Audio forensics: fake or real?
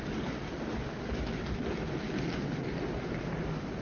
real